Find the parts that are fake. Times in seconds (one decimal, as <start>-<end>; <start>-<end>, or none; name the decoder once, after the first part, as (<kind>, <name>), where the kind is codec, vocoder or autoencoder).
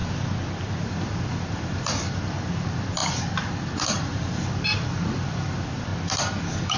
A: 0.8-5.9 (vocoder, BigVGAN v2)